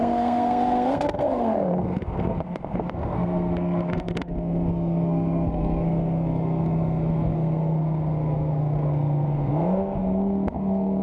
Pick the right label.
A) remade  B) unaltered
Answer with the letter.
A